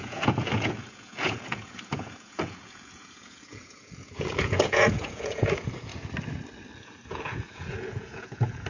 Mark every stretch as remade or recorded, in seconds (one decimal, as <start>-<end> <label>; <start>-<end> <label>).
0.0-5.9 remade; 5.9-6.8 recorded; 6.8-8.7 remade